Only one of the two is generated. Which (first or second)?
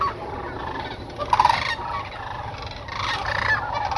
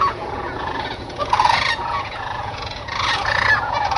second